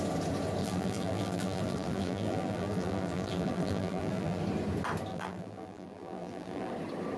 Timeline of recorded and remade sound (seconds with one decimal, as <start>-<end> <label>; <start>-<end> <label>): 0.0-0.6 recorded; 0.6-4.4 remade; 4.4-5.1 recorded; 5.1-6.7 remade; 6.7-7.2 recorded